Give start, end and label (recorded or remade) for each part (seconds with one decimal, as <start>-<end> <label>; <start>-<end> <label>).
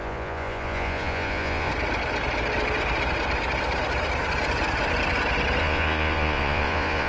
0.0-1.7 remade; 1.7-5.6 recorded; 5.6-7.1 remade